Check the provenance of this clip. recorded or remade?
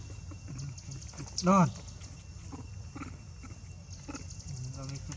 recorded